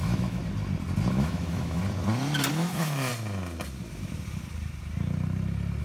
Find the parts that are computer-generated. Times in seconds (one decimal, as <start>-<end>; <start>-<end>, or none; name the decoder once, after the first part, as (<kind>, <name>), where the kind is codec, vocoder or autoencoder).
0.0-0.4 (autoencoder, DAC-VAE); 1.1-1.8; 2.5-3.1